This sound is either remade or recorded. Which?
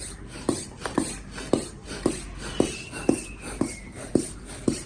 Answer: recorded